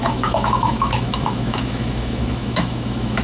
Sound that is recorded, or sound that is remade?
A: remade